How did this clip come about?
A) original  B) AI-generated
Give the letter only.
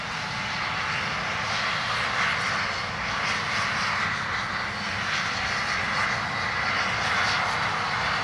A